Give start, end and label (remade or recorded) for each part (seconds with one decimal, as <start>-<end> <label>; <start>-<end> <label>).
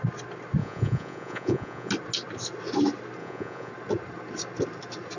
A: 0.0-0.6 recorded; 0.6-1.9 remade; 1.9-3.2 recorded; 3.2-3.7 remade; 3.7-5.2 recorded